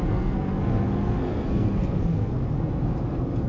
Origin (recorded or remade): remade